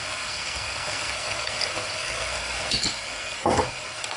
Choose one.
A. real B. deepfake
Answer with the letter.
B